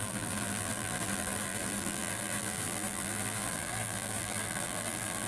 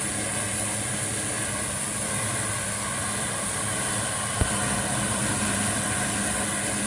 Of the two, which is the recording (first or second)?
second